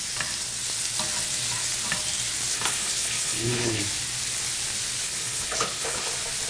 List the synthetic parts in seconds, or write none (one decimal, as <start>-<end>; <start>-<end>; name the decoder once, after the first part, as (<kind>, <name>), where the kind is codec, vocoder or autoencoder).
2.5-3.8 (codec, HILCodec); 5.0-6.1